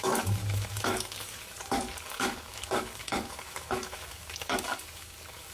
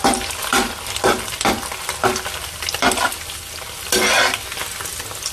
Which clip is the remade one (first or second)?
first